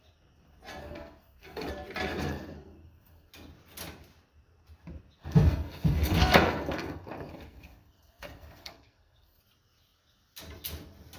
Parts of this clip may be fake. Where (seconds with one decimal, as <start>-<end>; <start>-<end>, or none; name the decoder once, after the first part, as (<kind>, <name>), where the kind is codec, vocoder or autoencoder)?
0.8-1.7 (codec, SNAC); 2.1-3.3; 5.2-9.4